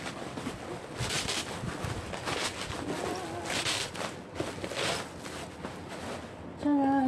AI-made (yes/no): no